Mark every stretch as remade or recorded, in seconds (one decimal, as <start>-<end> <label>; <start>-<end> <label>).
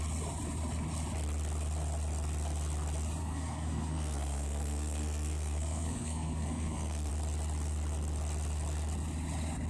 0.0-3.2 recorded; 3.2-7.1 remade; 7.1-9.7 recorded